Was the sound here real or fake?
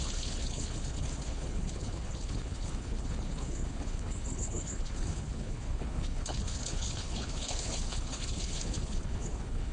fake